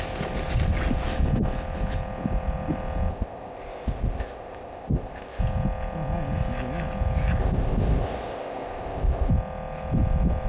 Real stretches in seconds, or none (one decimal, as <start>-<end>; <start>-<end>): 0.0-3.1; 5.4-7.4; 9.3-10.5